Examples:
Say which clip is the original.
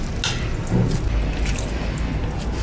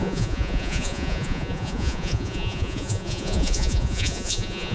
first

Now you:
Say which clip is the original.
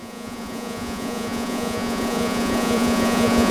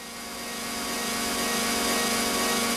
second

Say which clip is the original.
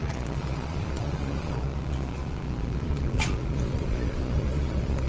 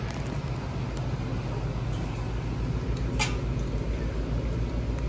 second